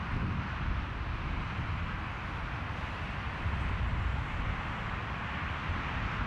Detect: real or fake real